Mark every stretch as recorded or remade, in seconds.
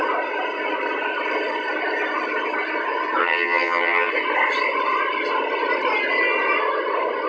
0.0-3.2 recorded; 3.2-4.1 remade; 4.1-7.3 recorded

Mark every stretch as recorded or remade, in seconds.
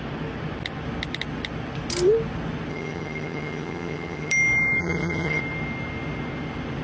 0.0-2.7 recorded; 2.7-4.3 remade; 4.3-4.8 recorded; 4.8-5.4 remade; 5.4-6.8 recorded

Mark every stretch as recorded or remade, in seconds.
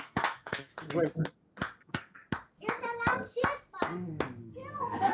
0.0-0.7 remade; 0.7-1.8 recorded; 1.8-2.2 remade; 2.2-4.4 recorded; 4.4-5.1 remade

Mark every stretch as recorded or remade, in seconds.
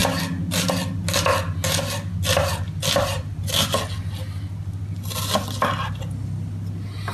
0.0-7.1 recorded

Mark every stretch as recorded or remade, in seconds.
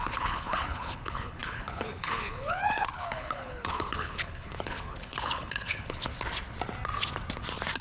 0.0-6.1 remade; 6.1-7.8 recorded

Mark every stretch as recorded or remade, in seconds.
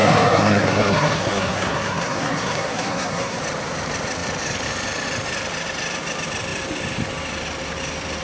0.0-3.4 remade; 3.4-8.2 recorded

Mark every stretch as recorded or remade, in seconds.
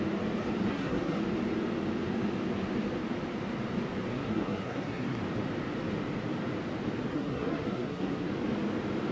0.0-0.7 recorded; 0.7-1.2 remade; 1.2-4.1 recorded; 4.1-5.2 remade; 5.2-7.1 recorded; 7.1-8.3 remade; 8.3-9.1 recorded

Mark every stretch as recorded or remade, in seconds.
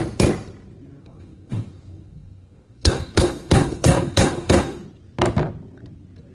0.0-1.0 recorded; 1.0-4.8 remade; 4.8-6.3 recorded